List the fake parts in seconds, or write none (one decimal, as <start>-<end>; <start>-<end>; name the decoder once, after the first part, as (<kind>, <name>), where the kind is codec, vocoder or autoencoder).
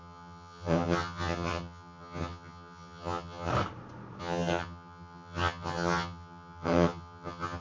0.0-3.5 (vocoder, HiFi-GAN); 4.2-7.6